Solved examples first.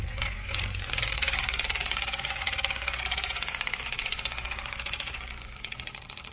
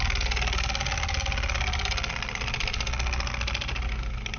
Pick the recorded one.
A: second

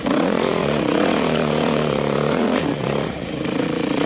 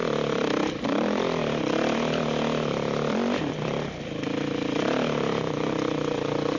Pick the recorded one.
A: second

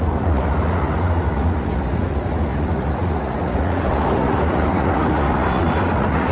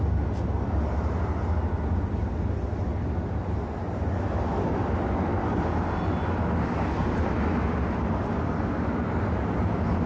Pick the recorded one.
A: second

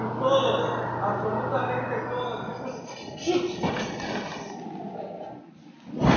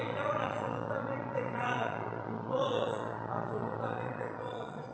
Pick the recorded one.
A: first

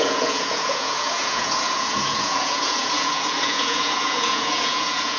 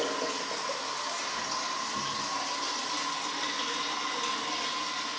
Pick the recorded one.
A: second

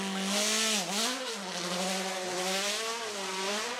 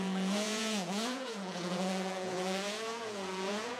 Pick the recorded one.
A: first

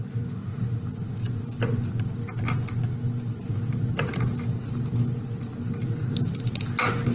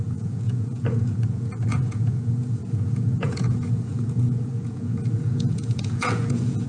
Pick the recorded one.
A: first